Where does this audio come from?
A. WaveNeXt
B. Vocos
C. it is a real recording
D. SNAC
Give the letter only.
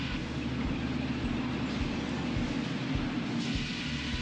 C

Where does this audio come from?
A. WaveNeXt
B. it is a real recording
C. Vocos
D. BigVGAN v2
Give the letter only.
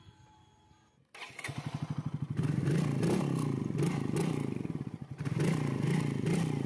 B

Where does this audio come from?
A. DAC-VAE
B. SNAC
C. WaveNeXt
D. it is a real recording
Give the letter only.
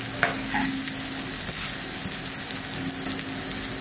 D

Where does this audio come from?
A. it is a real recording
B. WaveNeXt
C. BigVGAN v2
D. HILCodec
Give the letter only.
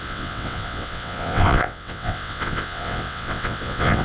B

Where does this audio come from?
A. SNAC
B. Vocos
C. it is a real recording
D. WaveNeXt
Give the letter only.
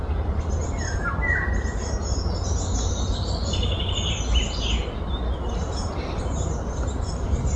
C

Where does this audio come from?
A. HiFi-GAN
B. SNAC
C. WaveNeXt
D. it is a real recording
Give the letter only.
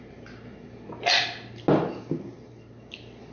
D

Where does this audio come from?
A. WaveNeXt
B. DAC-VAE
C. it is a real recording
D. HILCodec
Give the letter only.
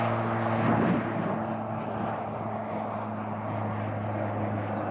C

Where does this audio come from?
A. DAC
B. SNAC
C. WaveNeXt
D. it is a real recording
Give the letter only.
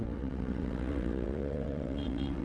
C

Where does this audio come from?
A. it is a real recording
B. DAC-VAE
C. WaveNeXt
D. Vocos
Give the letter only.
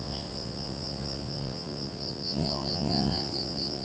C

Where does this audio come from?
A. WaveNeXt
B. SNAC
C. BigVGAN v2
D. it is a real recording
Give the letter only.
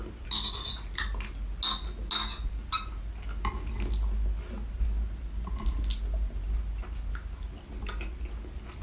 D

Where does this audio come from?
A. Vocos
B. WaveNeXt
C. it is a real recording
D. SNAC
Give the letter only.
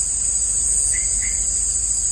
C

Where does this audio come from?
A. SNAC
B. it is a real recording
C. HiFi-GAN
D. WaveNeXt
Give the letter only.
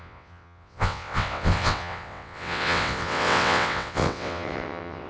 D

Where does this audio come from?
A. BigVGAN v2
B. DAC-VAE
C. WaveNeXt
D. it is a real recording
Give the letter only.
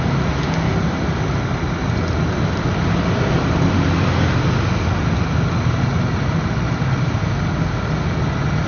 D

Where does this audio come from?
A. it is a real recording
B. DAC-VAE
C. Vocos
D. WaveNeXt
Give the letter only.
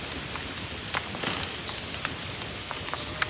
A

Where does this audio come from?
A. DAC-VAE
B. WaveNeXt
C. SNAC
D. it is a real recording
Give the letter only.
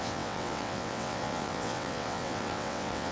B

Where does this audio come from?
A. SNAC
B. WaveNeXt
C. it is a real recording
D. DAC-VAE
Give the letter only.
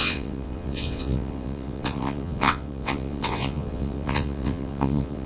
B